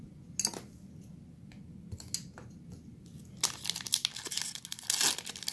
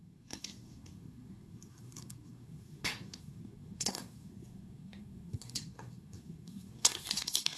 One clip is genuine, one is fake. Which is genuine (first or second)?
first